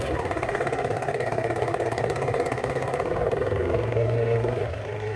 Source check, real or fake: fake